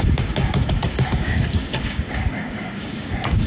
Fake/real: fake